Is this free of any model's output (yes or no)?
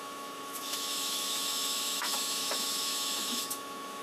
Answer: no